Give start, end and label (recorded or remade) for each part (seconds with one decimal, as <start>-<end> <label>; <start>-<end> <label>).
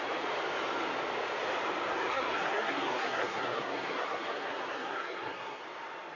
0.0-1.9 recorded; 1.9-5.6 remade; 5.6-6.2 recorded